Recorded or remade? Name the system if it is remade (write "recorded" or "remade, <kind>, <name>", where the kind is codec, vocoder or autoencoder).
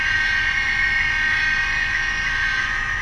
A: remade, vocoder, Vocos